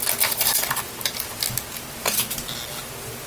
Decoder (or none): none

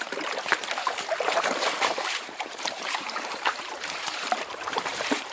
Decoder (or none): vocoder, BigVGAN v2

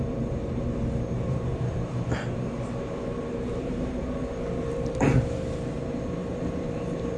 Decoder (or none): vocoder, BigVGAN v2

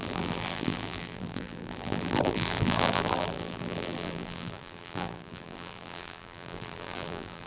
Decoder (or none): vocoder, BigVGAN v2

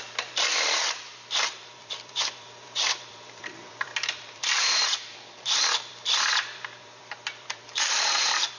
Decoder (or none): vocoder, BigVGAN v2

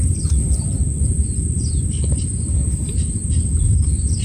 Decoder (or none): vocoder, BigVGAN v2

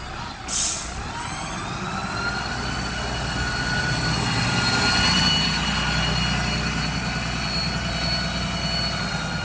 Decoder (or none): none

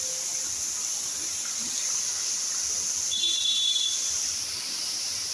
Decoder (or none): none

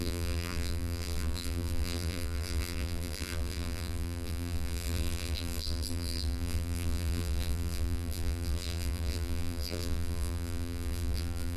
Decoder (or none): vocoder, BigVGAN v2